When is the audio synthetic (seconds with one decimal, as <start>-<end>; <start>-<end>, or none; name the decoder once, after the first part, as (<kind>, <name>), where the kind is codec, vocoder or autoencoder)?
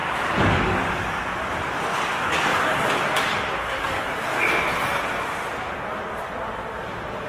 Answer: 0.0-1.1 (codec, DAC); 1.9-4.5